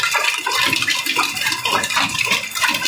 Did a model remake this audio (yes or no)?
no